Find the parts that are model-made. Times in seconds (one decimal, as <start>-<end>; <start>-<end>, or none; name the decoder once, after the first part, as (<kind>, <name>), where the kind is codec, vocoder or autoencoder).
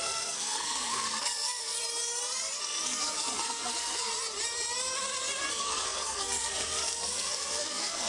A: 0.0-1.8 (codec, SNAC); 2.6-4.1; 5.5-8.1